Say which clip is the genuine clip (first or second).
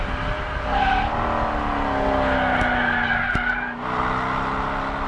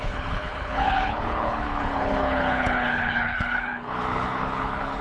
first